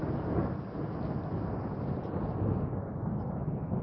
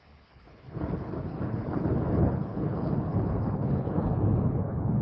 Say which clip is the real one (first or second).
first